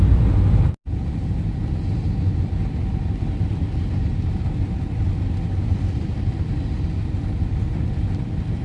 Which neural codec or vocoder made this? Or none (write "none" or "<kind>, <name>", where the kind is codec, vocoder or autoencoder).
none